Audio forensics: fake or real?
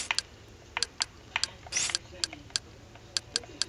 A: real